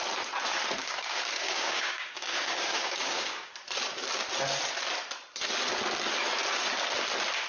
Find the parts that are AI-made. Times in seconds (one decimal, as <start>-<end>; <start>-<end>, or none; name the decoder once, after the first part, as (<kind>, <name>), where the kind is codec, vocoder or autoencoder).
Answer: 0.8-3.5 (codec, DAC)